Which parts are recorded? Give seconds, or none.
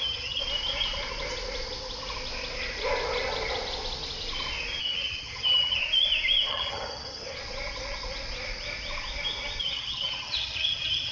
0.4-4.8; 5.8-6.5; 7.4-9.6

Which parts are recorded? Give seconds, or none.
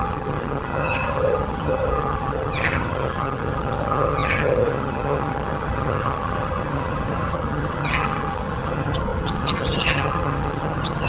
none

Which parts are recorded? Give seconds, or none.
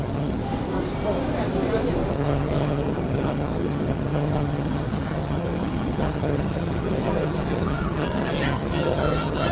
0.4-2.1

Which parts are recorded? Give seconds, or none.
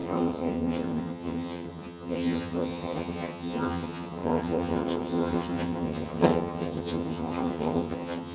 none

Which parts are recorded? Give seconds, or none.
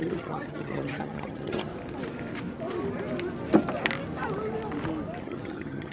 1.7-5.2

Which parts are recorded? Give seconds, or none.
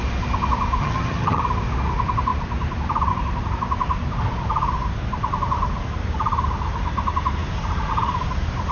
0.0-0.8; 1.4-8.7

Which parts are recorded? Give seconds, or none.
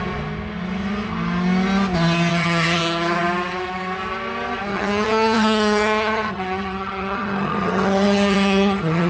0.0-2.3; 2.8-4.7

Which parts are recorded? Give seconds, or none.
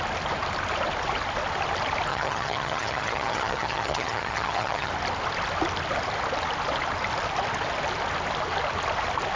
0.0-2.1; 4.9-9.4